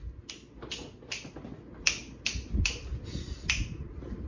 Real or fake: real